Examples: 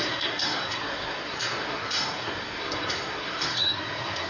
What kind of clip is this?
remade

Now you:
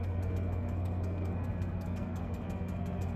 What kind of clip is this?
remade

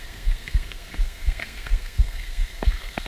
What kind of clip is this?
remade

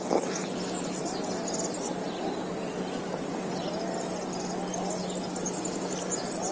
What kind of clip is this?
recorded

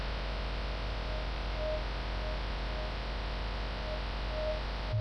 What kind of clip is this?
recorded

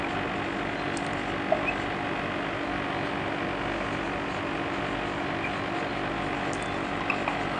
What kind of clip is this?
recorded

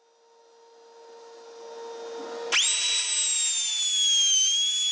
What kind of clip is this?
recorded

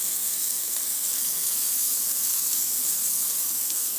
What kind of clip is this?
remade